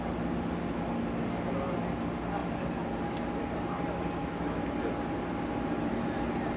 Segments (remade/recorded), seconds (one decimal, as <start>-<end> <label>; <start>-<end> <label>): 0.0-6.6 recorded